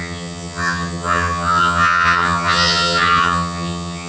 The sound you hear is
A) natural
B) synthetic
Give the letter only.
B